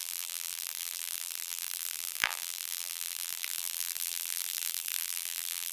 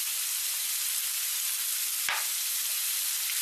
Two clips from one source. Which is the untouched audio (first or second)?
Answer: second